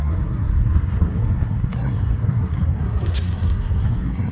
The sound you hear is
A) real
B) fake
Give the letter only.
B